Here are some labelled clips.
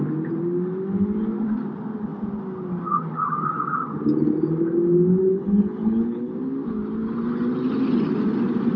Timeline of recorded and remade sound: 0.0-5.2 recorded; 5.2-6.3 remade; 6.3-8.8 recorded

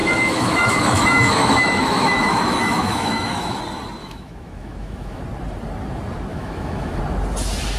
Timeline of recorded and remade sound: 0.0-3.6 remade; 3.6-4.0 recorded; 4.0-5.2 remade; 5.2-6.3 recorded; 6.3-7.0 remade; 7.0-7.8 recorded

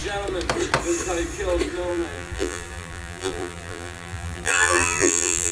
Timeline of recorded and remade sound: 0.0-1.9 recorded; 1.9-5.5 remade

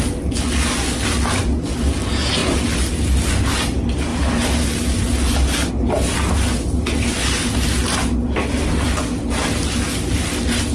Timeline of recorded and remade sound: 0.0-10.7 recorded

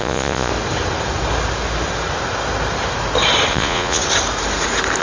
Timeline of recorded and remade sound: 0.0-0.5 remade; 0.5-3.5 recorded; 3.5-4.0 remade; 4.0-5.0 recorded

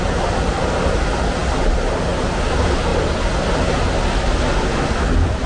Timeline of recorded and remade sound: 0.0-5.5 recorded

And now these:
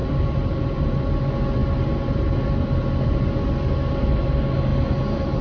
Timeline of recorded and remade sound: 0.0-1.0 remade; 1.0-4.7 recorded; 4.7-5.4 remade